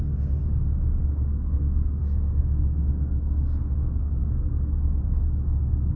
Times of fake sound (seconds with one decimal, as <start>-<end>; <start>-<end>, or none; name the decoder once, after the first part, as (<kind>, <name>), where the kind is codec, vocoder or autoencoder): 0.0-0.4 (codec, SNAC); 1.0-4.5; 5.2-6.0